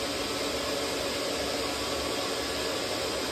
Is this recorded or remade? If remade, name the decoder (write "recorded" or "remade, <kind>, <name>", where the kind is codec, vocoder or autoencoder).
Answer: recorded